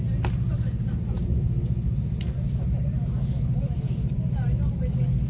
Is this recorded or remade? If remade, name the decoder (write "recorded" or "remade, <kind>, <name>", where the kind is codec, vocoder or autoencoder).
recorded